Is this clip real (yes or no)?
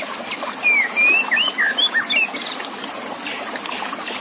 yes